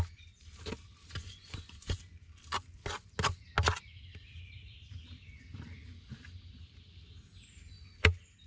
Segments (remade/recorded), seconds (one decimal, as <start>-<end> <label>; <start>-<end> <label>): 0.0-1.2 recorded; 1.2-2.0 remade; 2.0-8.5 recorded